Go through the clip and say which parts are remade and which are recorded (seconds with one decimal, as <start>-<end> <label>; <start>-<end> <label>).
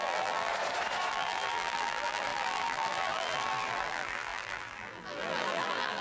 0.0-0.5 remade; 0.5-1.1 recorded; 1.1-6.0 remade